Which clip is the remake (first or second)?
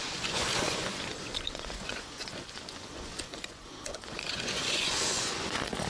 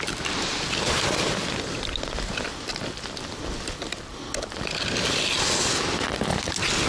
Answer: first